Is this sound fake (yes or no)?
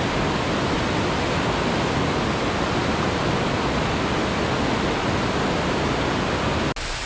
no